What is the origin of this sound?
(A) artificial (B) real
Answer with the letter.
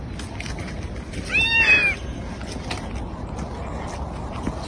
B